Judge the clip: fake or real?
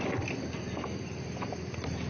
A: real